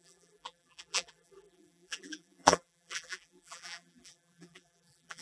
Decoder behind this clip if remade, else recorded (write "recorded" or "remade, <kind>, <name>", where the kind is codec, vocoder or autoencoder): remade, vocoder, BigVGAN v2